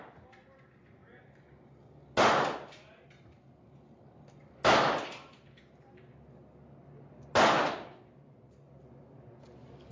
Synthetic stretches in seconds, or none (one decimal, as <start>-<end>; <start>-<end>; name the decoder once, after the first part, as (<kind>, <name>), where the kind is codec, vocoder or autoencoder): none